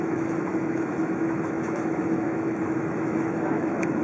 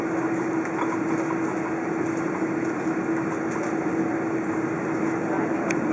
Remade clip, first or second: first